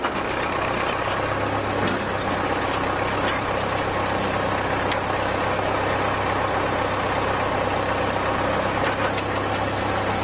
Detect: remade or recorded recorded